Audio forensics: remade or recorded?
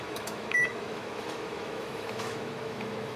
remade